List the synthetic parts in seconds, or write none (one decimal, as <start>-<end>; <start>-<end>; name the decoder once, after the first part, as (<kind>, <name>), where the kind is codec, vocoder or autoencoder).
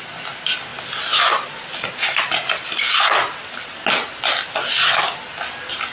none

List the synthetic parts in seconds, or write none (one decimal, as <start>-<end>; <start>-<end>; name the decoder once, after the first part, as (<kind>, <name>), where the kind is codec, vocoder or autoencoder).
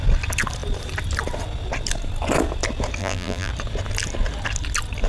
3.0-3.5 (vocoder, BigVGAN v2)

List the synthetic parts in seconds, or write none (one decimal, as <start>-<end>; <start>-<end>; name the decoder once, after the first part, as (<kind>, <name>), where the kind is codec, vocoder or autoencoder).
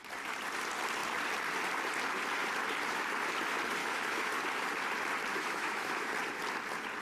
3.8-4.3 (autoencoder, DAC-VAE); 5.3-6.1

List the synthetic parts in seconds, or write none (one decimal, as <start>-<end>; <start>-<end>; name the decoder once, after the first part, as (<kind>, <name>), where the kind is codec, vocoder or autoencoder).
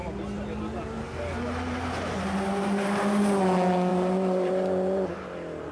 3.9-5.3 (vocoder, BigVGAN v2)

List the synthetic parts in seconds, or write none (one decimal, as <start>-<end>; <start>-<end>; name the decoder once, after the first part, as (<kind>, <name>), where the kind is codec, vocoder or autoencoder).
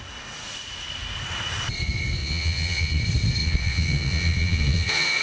2.2-3.0 (vocoder, Vocos); 3.4-5.2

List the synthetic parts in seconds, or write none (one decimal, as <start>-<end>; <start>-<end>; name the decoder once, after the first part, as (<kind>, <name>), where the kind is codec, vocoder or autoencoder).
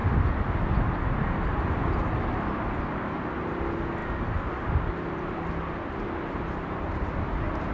none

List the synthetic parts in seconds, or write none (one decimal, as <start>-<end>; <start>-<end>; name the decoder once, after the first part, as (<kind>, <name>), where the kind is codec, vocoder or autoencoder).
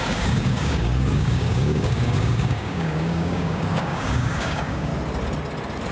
0.0-4.9 (codec, DAC)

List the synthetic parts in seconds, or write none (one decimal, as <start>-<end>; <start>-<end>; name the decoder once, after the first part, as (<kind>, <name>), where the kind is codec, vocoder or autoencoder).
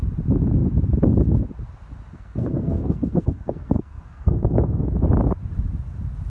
2.1-4.9 (codec, SNAC)